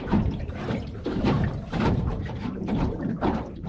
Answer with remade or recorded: remade